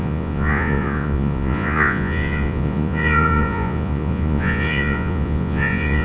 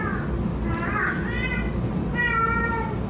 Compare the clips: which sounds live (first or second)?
second